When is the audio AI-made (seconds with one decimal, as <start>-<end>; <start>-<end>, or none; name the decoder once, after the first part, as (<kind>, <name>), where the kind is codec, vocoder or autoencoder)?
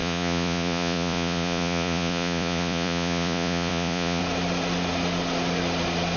0.0-4.2 (vocoder, Vocos)